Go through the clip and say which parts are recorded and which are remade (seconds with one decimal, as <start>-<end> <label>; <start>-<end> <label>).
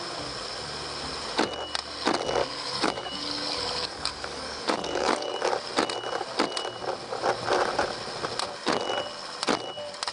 0.0-2.4 recorded; 2.4-5.4 remade; 5.4-10.1 recorded